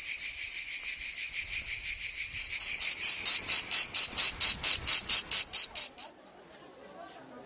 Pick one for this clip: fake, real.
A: real